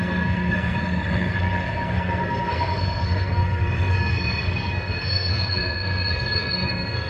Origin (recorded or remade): remade